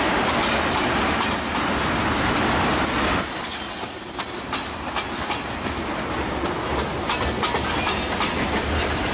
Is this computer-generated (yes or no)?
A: no